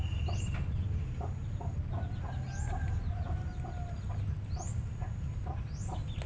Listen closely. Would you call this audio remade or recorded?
recorded